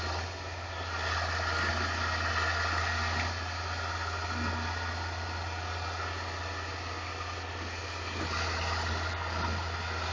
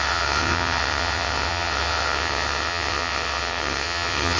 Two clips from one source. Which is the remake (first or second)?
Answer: second